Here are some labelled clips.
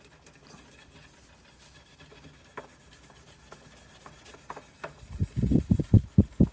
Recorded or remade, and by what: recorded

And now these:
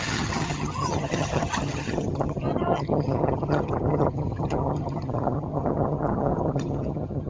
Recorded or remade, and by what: remade, vocoder, HiFi-GAN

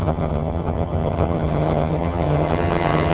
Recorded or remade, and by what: remade, vocoder, HiFi-GAN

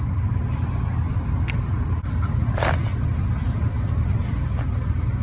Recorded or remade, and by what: recorded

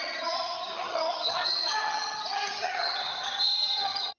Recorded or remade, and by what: remade, vocoder, HiFi-GAN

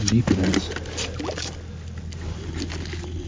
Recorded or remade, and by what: recorded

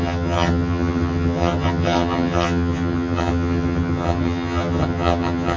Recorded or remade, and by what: remade, vocoder, HiFi-GAN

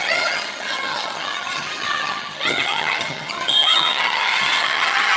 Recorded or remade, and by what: remade, vocoder, HiFi-GAN